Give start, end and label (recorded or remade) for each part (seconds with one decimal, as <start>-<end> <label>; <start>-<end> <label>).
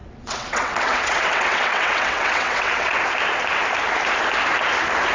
0.0-3.0 remade; 3.0-5.1 recorded